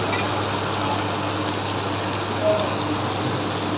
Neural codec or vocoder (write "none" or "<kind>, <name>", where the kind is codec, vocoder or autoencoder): none